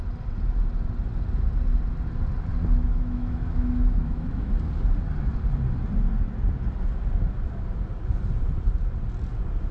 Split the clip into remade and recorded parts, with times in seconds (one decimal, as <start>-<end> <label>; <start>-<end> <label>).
0.0-2.8 recorded; 2.8-4.5 remade; 4.5-9.7 recorded